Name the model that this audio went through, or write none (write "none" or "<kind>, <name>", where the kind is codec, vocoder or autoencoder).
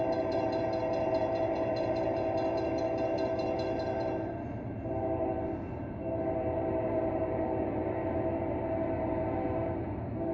vocoder, BigVGAN v2